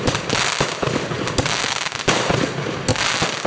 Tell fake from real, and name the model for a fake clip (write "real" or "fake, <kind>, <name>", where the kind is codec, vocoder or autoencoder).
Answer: real